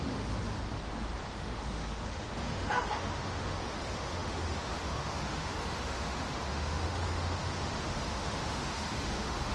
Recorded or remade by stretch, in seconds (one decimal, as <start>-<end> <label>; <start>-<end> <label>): 0.0-0.4 remade; 0.4-1.2 recorded; 1.2-9.5 remade

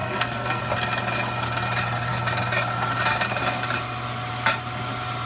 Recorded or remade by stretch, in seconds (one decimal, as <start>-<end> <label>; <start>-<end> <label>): 0.0-0.6 remade; 0.6-5.3 recorded

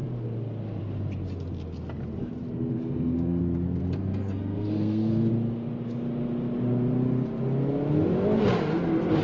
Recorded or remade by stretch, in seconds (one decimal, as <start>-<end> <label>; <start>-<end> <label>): 0.0-2.7 recorded; 2.7-3.4 remade; 3.4-3.8 recorded; 3.8-5.3 remade; 5.3-9.2 recorded